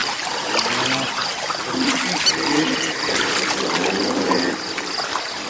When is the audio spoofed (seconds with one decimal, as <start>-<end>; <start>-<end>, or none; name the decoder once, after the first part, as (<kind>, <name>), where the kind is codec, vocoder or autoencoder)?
0.0-0.5 (vocoder, BigVGAN v2); 1.2-4.5